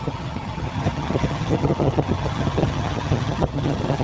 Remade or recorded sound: remade